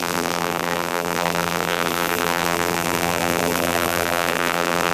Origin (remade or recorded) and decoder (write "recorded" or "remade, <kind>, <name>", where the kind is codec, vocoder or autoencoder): remade, vocoder, BigVGAN v2